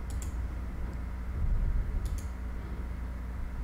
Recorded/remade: recorded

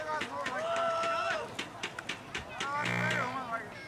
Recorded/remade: recorded